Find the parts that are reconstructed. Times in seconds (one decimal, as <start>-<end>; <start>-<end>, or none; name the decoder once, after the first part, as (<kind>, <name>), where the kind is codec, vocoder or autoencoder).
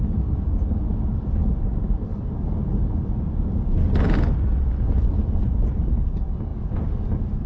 2.1-5.7 (vocoder, BigVGAN v2)